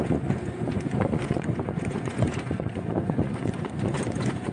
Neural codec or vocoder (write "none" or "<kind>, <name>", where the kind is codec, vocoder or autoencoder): vocoder, Vocos